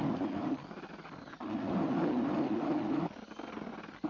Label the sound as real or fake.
real